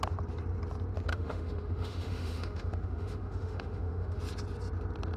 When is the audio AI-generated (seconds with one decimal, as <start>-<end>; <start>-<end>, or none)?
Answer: 1.1-4.2